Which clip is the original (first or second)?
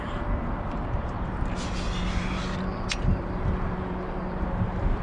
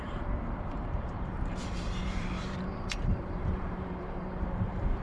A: first